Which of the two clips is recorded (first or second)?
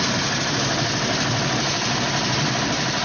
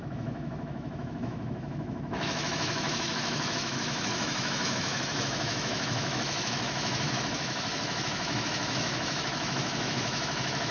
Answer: first